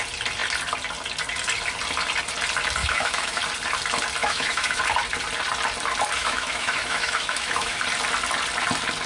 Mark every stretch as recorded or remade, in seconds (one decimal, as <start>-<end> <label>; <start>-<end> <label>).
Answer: 0.0-2.8 recorded; 2.8-3.4 remade; 3.4-4.2 recorded; 4.2-4.8 remade; 4.8-6.2 recorded; 6.2-7.8 remade; 7.8-9.1 recorded